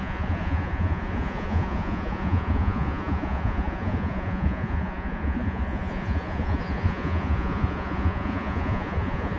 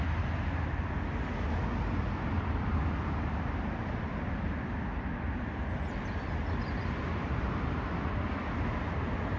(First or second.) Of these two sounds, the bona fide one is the second